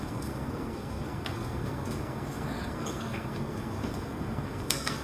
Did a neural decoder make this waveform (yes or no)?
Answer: yes